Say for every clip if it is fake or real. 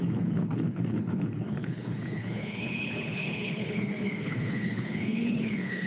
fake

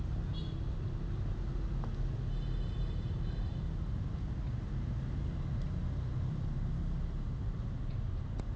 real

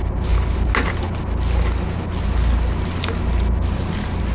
real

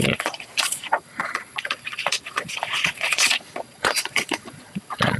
fake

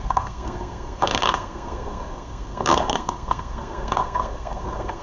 fake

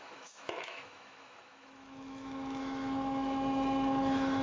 fake